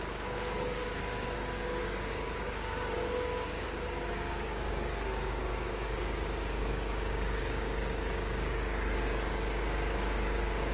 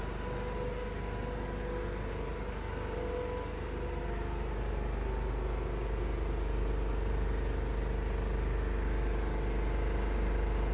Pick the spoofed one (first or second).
first